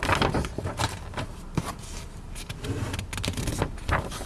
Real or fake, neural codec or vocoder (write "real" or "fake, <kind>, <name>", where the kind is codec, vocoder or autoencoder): real